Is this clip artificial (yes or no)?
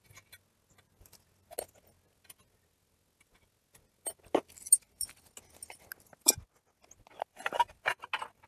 no